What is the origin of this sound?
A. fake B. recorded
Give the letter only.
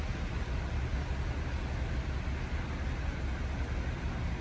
B